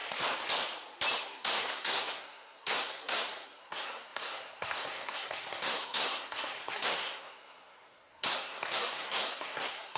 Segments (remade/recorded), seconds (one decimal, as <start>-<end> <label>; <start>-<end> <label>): 0.0-1.2 recorded; 1.2-10.0 remade